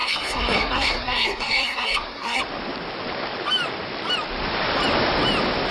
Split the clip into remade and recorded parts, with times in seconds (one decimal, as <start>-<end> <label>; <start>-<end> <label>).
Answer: 0.0-2.4 remade; 2.4-5.7 recorded